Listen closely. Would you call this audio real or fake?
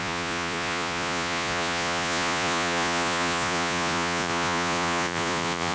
fake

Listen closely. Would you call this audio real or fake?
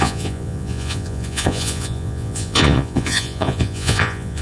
fake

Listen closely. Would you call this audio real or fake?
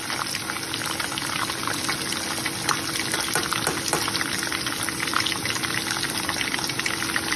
real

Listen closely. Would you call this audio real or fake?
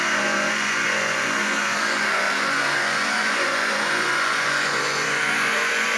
fake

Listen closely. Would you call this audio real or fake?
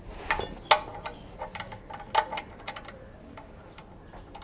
real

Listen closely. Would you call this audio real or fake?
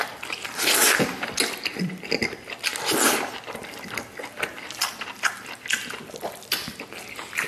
real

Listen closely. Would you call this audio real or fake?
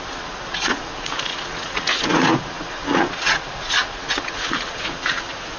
fake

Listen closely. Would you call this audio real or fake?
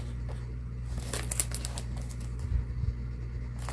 real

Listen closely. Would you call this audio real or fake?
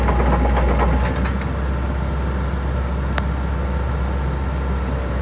real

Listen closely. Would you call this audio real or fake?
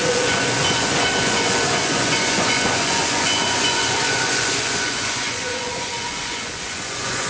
fake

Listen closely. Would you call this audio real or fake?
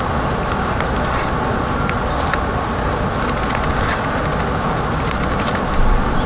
real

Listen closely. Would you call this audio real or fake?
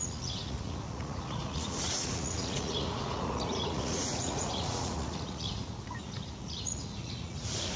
fake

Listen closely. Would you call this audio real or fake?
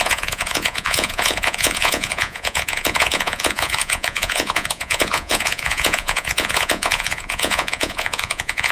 fake